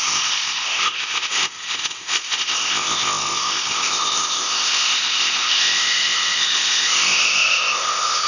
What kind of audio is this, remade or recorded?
remade